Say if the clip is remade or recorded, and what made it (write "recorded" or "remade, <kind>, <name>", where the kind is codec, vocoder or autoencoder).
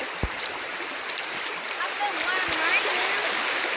recorded